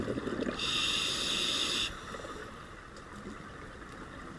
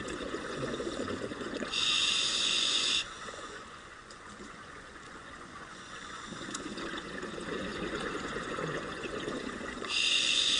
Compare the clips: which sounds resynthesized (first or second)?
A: second